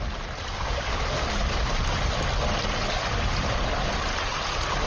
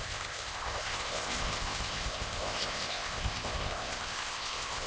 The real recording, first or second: first